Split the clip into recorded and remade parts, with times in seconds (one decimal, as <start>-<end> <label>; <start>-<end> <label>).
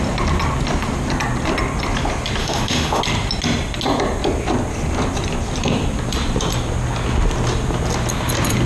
0.0-2.4 recorded; 2.4-3.0 remade; 3.0-8.7 recorded